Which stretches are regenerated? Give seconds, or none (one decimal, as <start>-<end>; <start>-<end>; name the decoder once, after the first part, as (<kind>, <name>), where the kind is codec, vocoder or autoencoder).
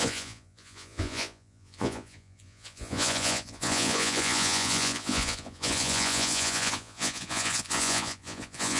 0.0-8.8 (vocoder, Vocos)